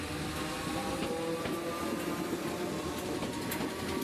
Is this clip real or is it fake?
real